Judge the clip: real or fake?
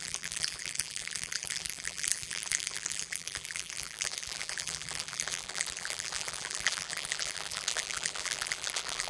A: fake